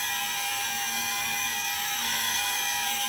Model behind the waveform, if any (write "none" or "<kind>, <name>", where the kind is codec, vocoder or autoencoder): codec, SNAC